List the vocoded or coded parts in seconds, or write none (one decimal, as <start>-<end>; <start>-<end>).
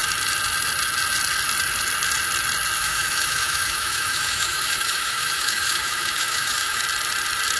2.8-6.8